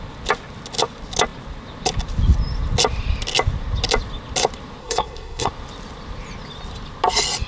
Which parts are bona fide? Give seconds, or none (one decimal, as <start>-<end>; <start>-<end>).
0.0-4.8; 5.5-7.5